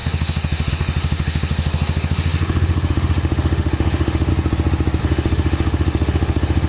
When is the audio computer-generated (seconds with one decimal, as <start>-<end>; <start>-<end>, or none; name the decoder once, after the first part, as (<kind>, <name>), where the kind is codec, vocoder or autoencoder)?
0.0-4.3 (autoencoder, DAC-VAE); 5.0-6.7